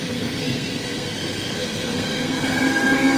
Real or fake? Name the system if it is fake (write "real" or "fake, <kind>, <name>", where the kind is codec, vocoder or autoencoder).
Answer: fake, codec, SNAC